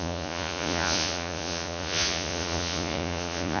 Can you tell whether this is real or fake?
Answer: fake